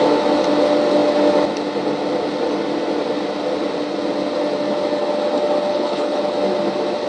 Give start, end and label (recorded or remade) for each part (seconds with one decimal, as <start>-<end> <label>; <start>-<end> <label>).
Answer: 0.0-5.7 recorded; 5.7-6.2 remade; 6.2-7.1 recorded